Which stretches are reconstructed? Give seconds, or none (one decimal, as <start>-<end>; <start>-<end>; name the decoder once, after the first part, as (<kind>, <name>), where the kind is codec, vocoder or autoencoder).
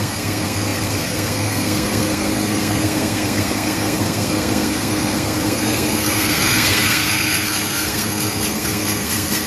0.0-9.5 (codec, SNAC)